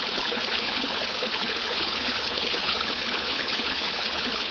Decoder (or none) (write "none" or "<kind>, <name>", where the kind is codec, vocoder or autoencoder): codec, HILCodec